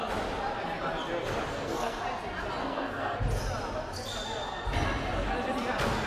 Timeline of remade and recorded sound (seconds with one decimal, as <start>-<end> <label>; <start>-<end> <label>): 0.0-1.5 recorded; 1.5-2.0 remade; 2.0-2.6 recorded; 2.6-3.2 remade; 3.2-6.1 recorded